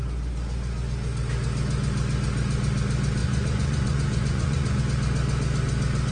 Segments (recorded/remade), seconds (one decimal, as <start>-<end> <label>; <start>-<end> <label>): 0.0-3.2 recorded; 3.2-4.8 remade; 4.8-6.1 recorded